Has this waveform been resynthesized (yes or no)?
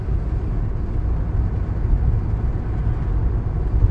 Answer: no